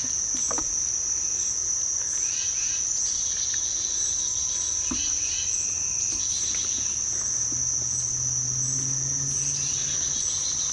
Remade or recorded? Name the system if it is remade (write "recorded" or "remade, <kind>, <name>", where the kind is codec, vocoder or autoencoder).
recorded